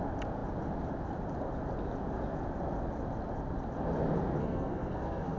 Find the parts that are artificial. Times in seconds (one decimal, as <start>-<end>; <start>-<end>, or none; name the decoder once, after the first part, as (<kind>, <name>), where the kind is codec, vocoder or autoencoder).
4.4-5.4 (codec, SNAC)